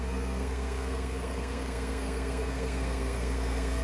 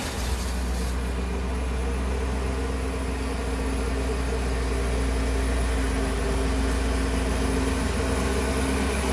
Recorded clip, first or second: second